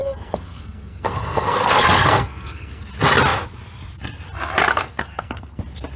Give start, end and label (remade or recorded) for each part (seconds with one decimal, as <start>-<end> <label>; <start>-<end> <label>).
0.0-2.9 remade; 2.9-4.7 recorded; 4.7-5.6 remade; 5.6-6.0 recorded